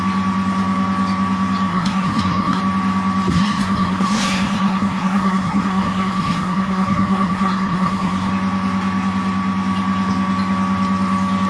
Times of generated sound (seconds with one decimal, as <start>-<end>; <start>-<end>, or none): 1.7-2.6; 3.3-8.3